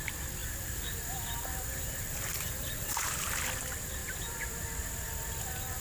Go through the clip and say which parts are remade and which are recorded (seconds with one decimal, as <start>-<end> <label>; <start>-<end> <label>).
0.0-0.4 recorded; 0.4-3.3 remade; 3.3-4.0 recorded; 4.0-4.5 remade; 4.5-5.8 recorded